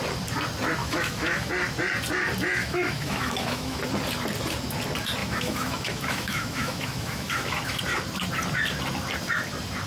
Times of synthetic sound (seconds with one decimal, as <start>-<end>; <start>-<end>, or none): 0.8-1.5; 2.6-3.8; 5.2-7.8

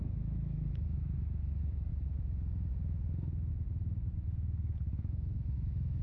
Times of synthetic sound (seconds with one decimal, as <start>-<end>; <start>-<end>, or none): 0.0-1.9; 3.5-6.0

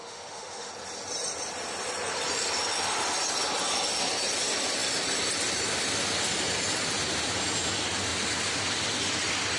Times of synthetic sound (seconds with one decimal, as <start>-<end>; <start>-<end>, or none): 0.0-0.7

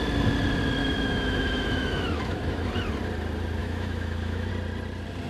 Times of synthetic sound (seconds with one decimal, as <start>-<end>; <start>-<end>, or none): 0.8-2.7; 3.6-4.5

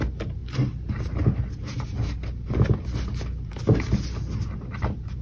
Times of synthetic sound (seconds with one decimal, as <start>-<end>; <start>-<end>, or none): none

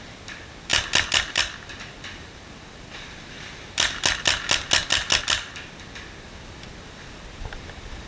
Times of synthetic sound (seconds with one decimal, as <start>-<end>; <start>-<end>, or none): none

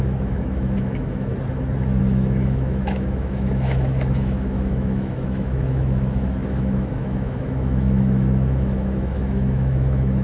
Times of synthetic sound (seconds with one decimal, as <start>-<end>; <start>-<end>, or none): 0.0-1.3; 2.0-10.2